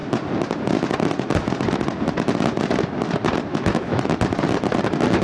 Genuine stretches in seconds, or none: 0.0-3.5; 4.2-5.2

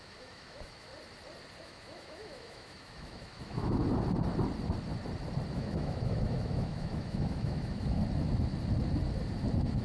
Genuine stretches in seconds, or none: 0.9-1.6; 3.8-5.5; 8.0-9.8

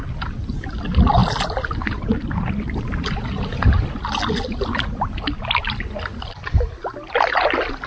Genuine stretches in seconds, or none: 0.0-7.9

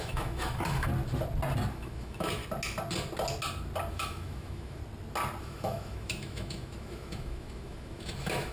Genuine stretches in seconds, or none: 0.9-1.7; 2.4-3.9; 4.8-5.4

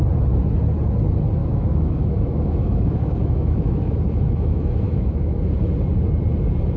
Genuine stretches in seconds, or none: 0.0-1.4; 5.5-6.8

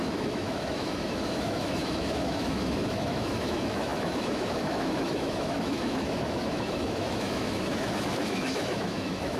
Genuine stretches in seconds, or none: none